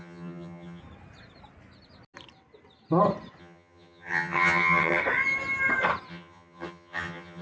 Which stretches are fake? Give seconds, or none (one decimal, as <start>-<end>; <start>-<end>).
0.0-0.8; 3.4-5.0; 6.1-7.4